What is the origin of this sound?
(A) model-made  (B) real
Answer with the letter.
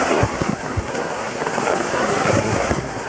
A